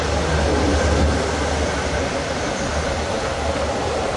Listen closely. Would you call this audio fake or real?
real